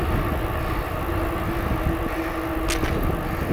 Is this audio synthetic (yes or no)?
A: no